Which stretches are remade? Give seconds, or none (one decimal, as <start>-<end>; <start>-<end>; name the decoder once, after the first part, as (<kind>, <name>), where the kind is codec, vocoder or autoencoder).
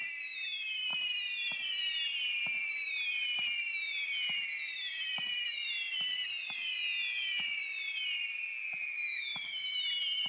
0.9-2.4 (vocoder, BigVGAN v2); 4.6-6.8